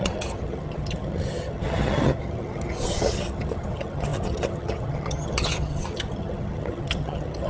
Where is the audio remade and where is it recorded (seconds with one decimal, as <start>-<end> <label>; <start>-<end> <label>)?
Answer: 0.0-7.5 remade